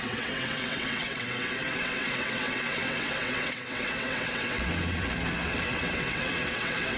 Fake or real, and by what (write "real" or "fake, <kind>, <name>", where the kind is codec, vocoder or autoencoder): fake, vocoder, WaveNeXt